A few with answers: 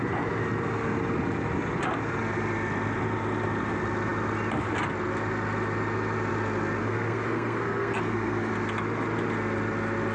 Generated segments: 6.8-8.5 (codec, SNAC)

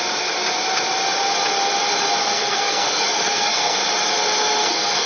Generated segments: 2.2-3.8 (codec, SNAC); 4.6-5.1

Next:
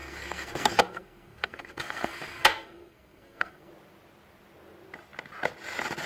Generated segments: 0.0-3.7 (codec, SNAC)

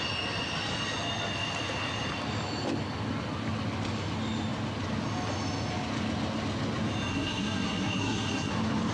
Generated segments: 7.1-8.5 (codec, SNAC)

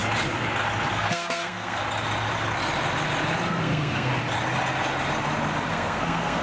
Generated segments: 0.9-1.8 (codec, SNAC); 3.5-4.1; 5.7-6.4

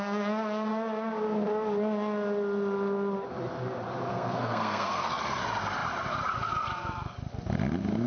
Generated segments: 4.1-5.2 (codec, SNAC)